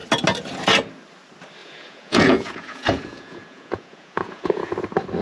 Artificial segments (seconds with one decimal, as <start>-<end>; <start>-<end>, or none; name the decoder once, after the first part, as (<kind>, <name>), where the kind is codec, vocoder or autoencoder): 1.6-4.7 (vocoder, Vocos)